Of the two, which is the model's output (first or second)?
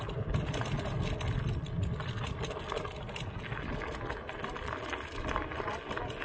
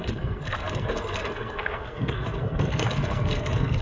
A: second